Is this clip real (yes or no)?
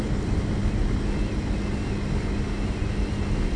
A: yes